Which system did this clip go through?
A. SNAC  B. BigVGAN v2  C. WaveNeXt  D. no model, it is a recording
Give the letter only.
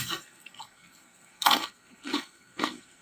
A